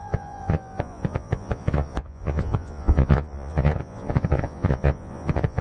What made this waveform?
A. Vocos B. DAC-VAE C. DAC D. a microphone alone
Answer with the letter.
A